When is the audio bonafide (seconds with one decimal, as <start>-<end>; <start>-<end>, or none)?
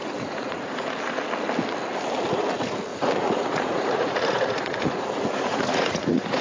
0.9-2.9